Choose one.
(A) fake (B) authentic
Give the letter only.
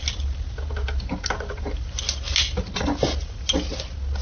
B